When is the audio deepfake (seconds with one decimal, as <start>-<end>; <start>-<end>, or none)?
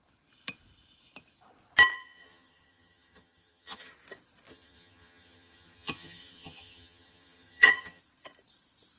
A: 1.9-3.9; 4.5-8.0